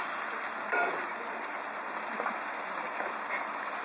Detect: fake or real real